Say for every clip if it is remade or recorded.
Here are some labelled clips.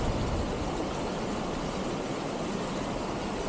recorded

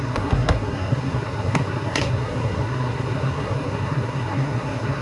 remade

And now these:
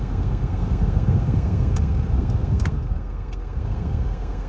remade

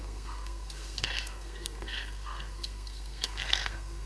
remade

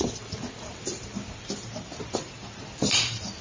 recorded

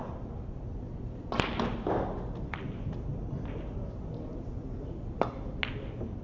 recorded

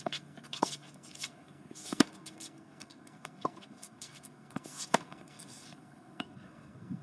remade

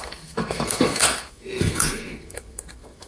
remade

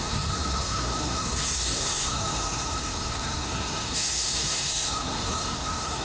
remade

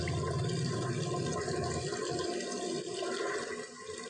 recorded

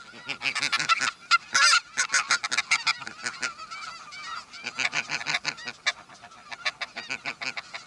recorded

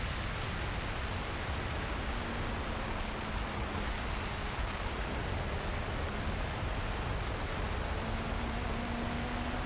recorded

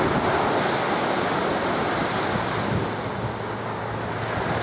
recorded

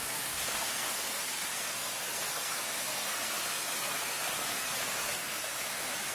remade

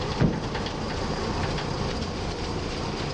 recorded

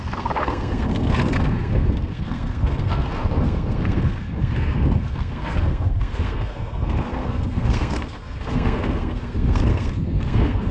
remade